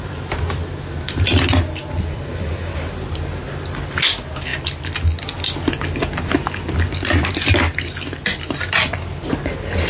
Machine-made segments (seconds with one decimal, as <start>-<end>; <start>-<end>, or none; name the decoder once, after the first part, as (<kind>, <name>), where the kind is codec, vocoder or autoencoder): none